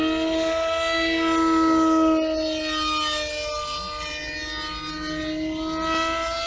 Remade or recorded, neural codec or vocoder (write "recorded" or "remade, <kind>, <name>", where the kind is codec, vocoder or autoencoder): recorded